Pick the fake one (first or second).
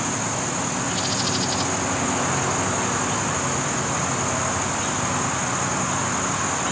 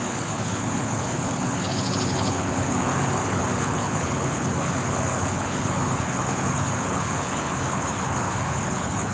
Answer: second